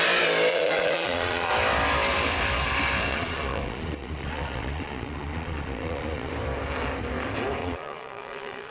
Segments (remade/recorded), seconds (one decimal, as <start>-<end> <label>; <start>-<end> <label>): 0.0-0.5 recorded; 0.5-1.5 remade; 1.5-3.1 recorded; 3.1-6.3 remade; 6.3-7.6 recorded; 7.6-8.7 remade